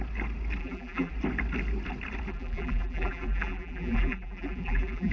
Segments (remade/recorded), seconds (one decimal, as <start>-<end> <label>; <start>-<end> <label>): 0.0-0.6 recorded; 0.6-1.1 remade; 1.1-2.3 recorded; 2.3-5.1 remade